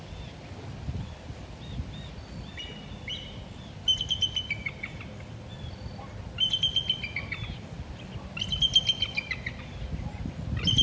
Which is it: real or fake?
real